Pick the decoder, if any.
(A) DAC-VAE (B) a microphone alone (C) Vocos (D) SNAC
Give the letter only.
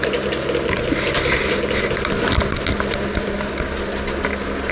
B